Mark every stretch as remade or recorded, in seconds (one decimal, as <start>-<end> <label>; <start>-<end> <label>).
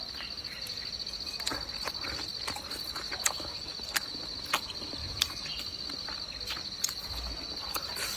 0.0-5.0 recorded; 5.0-5.6 remade; 5.6-8.2 recorded